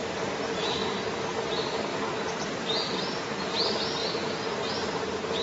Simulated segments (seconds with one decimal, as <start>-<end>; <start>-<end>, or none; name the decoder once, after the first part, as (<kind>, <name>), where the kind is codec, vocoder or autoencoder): none